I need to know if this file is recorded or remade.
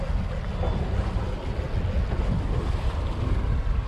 recorded